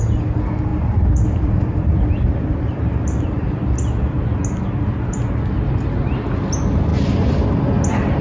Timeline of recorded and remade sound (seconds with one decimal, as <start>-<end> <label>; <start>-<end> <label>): 0.0-0.7 recorded; 0.7-2.1 remade; 2.1-8.2 recorded

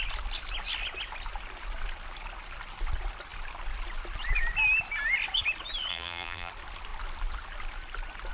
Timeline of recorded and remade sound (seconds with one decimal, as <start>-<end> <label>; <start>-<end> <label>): 0.0-5.9 recorded; 5.9-6.5 remade; 6.5-8.3 recorded

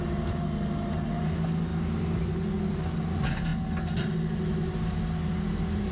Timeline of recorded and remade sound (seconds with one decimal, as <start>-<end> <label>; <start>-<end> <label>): 0.0-1.7 recorded; 1.7-2.3 remade; 2.3-5.9 recorded

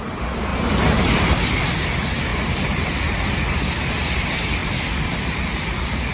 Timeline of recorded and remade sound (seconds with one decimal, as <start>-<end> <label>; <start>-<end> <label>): 0.0-0.5 recorded; 0.5-1.6 remade; 1.6-2.3 recorded; 2.3-3.3 remade; 3.3-4.6 recorded; 4.6-6.1 remade

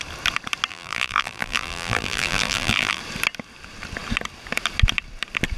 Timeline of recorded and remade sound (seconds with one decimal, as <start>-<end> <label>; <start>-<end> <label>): 0.0-0.7 recorded; 0.7-3.0 remade; 3.0-5.6 recorded

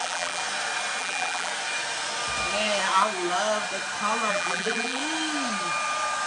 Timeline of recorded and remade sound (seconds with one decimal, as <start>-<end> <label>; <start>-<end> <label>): 0.0-0.4 remade; 0.4-1.0 recorded; 1.0-1.5 remade; 1.5-4.3 recorded; 4.3-5.0 remade; 5.0-6.3 recorded

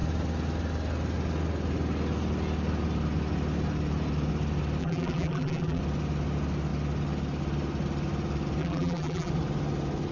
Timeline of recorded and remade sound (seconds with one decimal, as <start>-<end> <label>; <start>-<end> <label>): 0.0-4.8 recorded; 4.8-5.8 remade; 5.8-8.6 recorded; 8.6-9.3 remade; 9.3-10.1 recorded